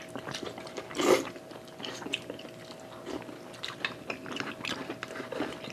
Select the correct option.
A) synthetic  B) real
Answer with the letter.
B